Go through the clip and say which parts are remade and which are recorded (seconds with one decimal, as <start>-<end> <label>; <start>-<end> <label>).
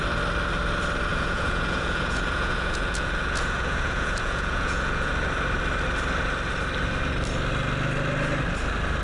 0.0-1.1 recorded; 1.1-5.1 remade; 5.1-9.0 recorded